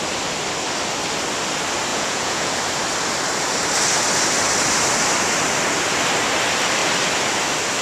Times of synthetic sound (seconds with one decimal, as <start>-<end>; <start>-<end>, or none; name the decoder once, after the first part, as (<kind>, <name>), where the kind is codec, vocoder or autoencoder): 1.9-2.5 (vocoder, Vocos)